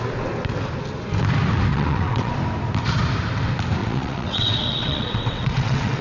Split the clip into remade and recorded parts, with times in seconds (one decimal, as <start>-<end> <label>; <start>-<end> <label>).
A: 0.0-1.7 recorded; 1.7-2.3 remade; 2.3-3.8 recorded; 3.8-6.0 remade